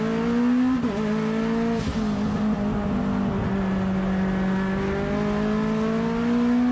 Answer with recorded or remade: recorded